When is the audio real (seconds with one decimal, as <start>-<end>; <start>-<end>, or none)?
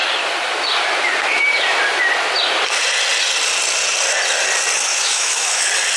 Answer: 0.0-4.9; 5.6-6.0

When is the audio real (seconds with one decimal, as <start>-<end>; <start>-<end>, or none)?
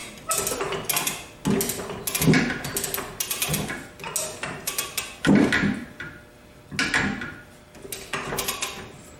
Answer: 0.0-9.2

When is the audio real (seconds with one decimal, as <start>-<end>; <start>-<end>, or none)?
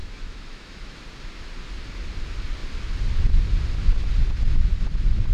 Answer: 1.0-5.3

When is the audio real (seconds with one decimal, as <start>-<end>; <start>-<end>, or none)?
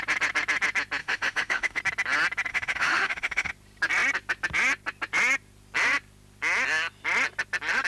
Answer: 0.0-1.0; 1.8-2.5; 3.5-7.9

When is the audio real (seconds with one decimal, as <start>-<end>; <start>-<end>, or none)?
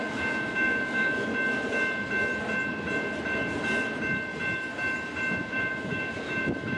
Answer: 1.3-5.4